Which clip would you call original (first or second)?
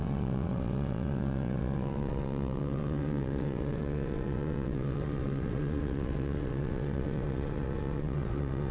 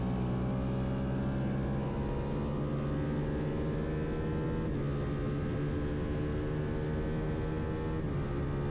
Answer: second